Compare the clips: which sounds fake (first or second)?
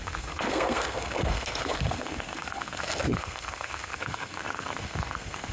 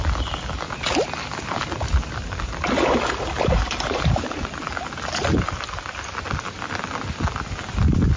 first